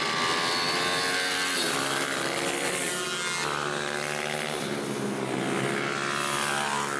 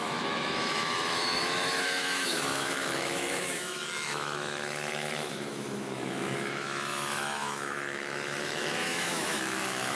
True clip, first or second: first